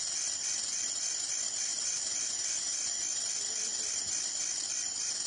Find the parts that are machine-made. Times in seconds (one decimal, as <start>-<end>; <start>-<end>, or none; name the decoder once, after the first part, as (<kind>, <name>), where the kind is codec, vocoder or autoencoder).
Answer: none